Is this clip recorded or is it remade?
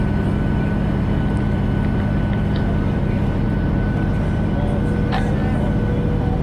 recorded